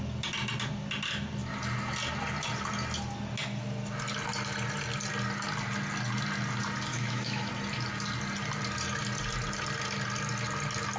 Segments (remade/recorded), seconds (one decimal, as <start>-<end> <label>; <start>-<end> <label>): 0.0-6.9 recorded; 6.9-7.5 remade; 7.5-11.0 recorded